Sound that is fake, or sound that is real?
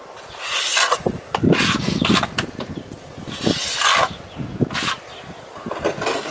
real